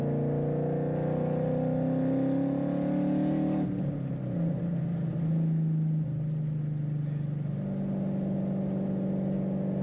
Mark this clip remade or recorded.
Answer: recorded